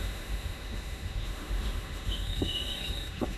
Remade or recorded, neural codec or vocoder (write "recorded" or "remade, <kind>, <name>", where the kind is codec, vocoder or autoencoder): remade, autoencoder, DAC-VAE